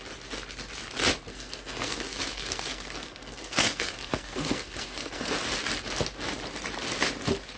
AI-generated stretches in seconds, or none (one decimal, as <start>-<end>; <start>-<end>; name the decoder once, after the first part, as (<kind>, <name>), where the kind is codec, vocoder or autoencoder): 1.3-5.3 (codec, SNAC)